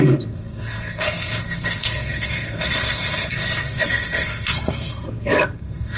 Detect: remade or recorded remade